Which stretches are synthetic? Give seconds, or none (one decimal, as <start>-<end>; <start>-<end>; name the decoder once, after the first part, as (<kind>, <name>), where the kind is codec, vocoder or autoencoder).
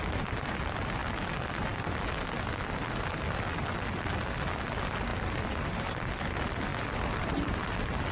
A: none